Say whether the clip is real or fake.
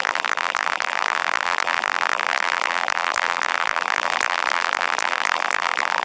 fake